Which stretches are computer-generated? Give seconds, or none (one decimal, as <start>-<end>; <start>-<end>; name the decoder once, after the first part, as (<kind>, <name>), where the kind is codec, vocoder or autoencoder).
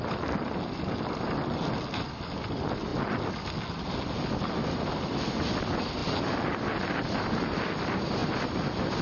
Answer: none